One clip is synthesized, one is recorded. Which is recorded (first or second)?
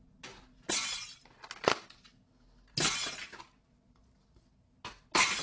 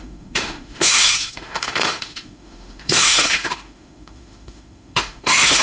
first